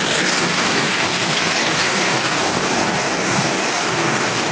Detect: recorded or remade remade